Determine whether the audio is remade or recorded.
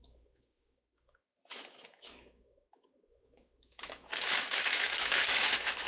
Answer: remade